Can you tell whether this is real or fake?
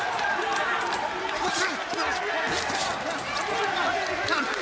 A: real